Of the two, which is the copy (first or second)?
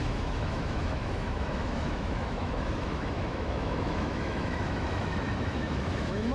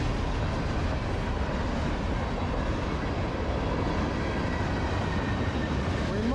first